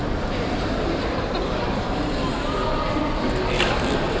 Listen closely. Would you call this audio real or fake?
real